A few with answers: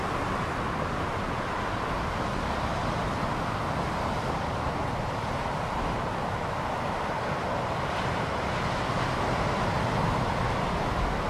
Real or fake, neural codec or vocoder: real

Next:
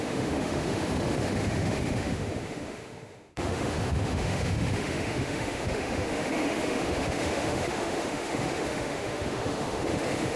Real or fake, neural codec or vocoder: fake, autoencoder, DAC-VAE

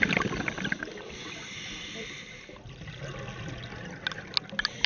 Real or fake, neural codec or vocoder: real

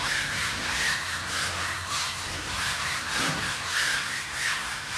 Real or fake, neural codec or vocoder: fake, codec, SNAC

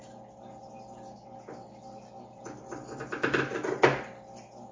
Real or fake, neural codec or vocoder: real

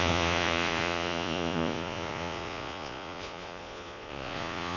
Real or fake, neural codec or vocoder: fake, vocoder, Vocos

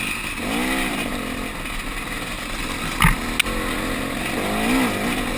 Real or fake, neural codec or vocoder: real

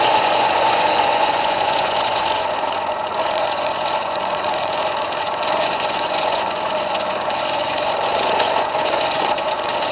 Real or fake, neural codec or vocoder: fake, vocoder, Vocos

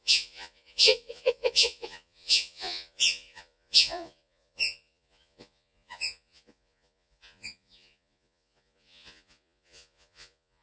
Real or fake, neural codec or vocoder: fake, vocoder, Vocos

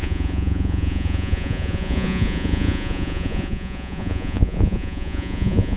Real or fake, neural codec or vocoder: fake, vocoder, Vocos